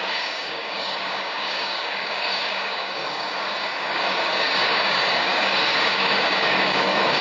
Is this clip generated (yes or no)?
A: yes